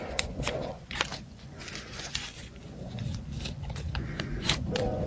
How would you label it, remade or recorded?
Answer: remade